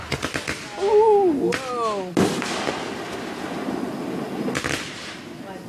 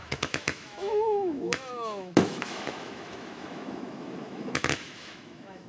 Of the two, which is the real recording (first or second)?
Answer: first